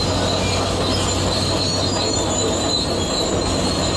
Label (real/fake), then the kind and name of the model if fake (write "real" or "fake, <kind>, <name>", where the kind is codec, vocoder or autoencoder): real